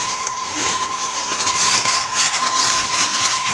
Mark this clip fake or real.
fake